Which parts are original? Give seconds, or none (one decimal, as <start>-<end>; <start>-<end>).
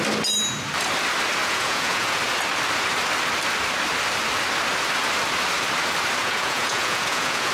0.0-1.4; 2.2-6.2